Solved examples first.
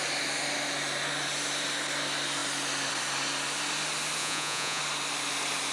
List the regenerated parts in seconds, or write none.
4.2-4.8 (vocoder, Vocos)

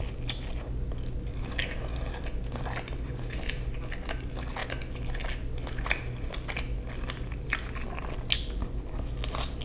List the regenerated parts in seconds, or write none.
none

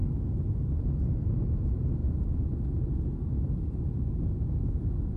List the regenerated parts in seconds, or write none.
none

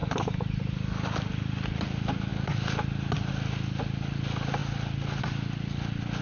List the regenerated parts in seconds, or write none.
none

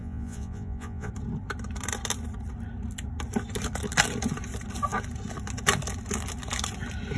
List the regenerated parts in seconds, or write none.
0.0-1.1 (vocoder, Vocos)

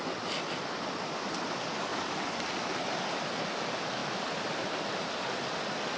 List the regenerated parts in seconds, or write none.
none

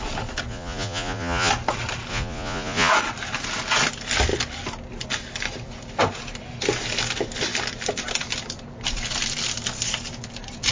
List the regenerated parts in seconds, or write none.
0.5-1.5 (vocoder, Vocos); 2.1-2.9